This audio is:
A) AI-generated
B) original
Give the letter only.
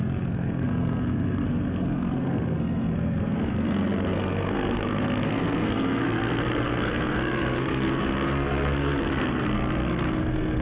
A